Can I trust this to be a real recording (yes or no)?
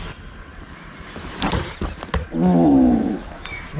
yes